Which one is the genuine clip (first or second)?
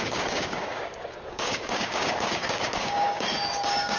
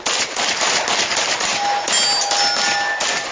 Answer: second